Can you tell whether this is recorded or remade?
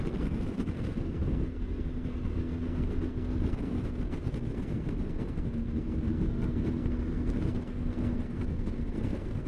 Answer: remade